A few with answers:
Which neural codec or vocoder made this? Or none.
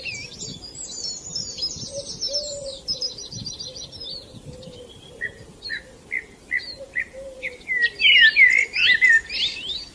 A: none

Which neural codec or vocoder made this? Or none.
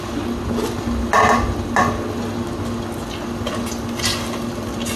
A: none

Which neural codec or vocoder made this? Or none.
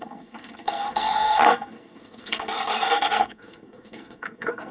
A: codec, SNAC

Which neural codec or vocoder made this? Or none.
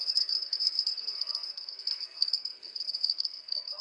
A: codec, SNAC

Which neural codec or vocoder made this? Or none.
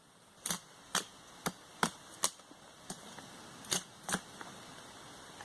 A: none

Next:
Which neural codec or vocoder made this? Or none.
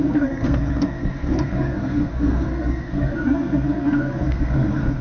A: codec, SNAC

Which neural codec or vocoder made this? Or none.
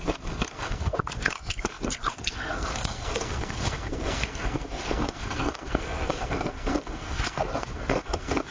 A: codec, SNAC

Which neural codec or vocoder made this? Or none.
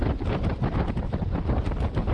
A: none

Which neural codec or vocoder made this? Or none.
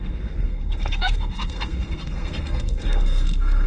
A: codec, SNAC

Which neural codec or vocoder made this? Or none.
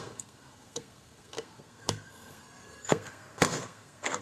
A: codec, SNAC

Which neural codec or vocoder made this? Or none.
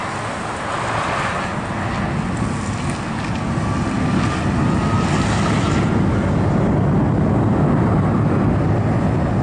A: none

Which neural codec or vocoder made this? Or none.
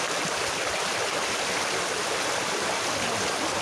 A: none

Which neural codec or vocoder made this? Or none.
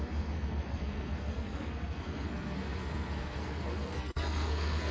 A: codec, SNAC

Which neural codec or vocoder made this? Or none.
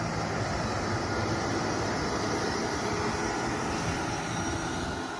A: none